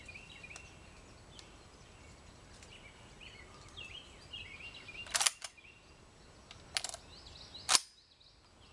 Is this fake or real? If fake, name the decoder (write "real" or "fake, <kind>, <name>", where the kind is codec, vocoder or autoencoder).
real